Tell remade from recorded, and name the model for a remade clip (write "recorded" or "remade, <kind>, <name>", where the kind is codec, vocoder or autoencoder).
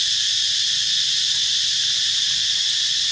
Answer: recorded